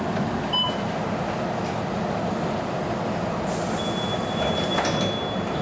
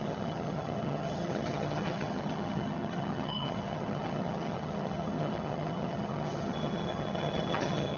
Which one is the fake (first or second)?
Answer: second